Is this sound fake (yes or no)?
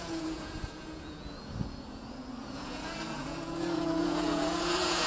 yes